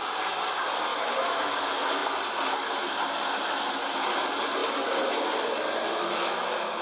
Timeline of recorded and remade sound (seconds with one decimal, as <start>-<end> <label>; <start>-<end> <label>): 0.0-0.9 recorded; 0.9-1.6 remade; 1.6-5.9 recorded; 5.9-6.8 remade